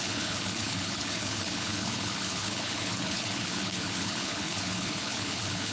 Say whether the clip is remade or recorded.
remade